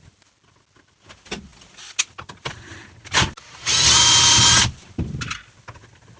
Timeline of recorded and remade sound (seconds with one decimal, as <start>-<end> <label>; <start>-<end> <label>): 0.0-6.2 recorded